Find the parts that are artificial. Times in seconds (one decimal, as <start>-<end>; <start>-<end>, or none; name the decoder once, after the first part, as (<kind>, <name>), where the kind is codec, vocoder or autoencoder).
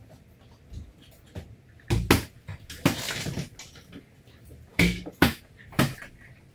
4.7-5.4 (codec, DAC)